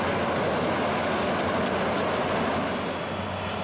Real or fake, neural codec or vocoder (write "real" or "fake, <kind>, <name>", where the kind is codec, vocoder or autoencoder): real